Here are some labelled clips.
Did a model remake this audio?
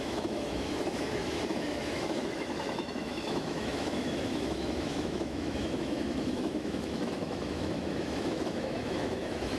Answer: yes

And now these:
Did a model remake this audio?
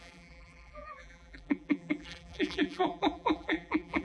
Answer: yes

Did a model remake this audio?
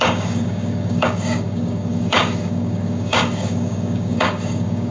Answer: yes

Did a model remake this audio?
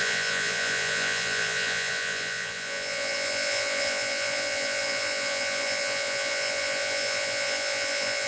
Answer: yes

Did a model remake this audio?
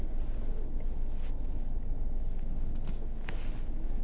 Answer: no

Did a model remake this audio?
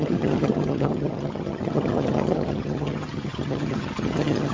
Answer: yes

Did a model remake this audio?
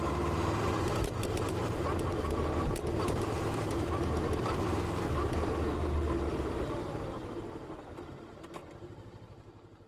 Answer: yes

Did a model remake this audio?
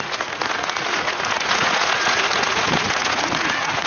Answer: yes